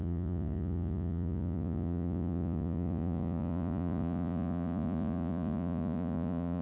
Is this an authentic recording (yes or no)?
no